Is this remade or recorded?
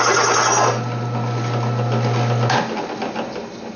recorded